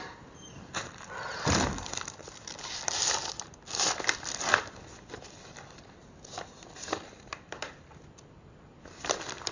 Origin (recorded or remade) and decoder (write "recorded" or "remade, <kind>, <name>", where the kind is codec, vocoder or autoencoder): remade, vocoder, BigVGAN v2